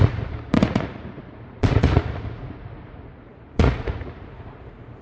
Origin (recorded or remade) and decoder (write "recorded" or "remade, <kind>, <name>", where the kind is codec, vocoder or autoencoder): remade, vocoder, Vocos